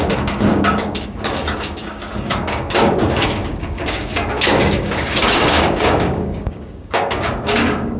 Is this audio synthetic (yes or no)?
yes